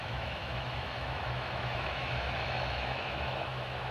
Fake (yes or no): yes